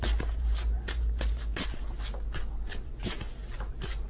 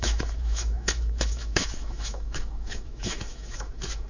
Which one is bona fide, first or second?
first